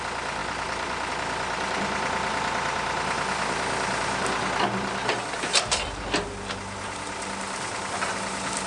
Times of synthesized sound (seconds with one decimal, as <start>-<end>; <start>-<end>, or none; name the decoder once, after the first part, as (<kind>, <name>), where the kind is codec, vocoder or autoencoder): none